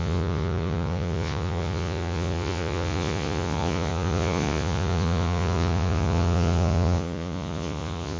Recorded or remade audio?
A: remade